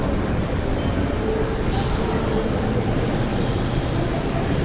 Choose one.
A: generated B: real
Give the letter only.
A